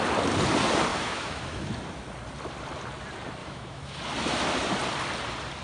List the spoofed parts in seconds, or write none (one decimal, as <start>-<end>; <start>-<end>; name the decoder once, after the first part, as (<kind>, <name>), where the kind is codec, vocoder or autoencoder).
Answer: 0.9-1.7 (autoencoder, DAC-VAE); 3.4-4.0

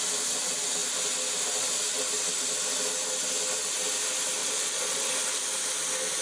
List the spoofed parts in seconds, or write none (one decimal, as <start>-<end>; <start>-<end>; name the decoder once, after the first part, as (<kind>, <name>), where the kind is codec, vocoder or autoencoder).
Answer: 4.4-5.1 (vocoder, Vocos)

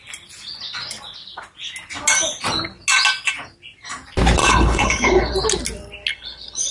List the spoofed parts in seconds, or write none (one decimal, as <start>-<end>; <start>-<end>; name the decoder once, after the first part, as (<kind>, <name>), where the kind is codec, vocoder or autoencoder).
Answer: 4.4-5.3 (codec, HILCodec); 6.1-6.7

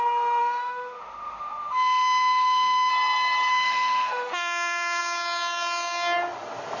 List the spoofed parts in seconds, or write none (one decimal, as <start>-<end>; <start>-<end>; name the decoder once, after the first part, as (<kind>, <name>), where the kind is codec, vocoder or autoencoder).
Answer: 0.4-2.9 (autoencoder, DAC-VAE); 3.5-5.0

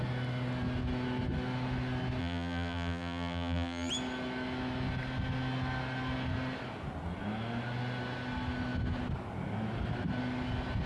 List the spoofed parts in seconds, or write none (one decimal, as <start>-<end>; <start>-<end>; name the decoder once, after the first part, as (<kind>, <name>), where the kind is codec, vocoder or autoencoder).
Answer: 2.2-3.9 (vocoder, BigVGAN v2)

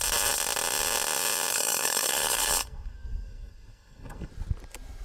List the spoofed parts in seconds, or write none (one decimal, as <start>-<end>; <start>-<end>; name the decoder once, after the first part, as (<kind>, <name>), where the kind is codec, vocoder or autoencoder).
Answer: 1.5-4.3 (codec, SNAC)

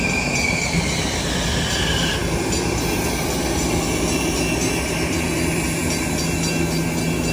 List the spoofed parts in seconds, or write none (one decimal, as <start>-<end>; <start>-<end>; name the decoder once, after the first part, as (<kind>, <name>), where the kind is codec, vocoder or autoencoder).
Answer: none

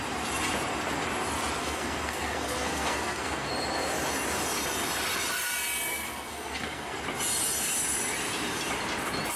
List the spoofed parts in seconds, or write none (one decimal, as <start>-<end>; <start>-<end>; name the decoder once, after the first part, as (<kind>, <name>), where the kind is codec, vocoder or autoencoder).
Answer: 1.6-3.5 (codec, SNAC); 5.9-7.0